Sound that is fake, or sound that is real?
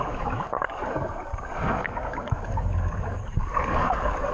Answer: fake